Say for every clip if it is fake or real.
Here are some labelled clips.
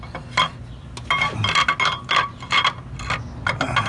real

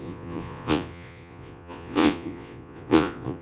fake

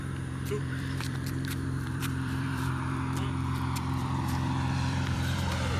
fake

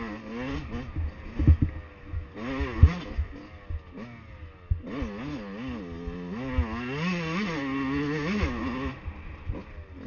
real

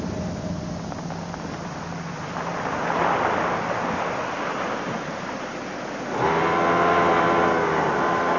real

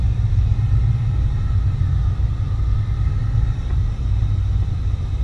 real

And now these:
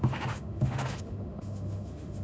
fake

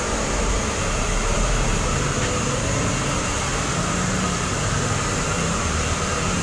fake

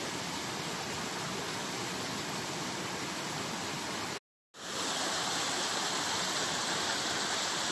real